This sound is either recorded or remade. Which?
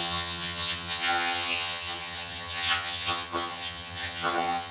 remade